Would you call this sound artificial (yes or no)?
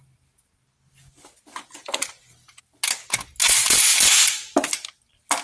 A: no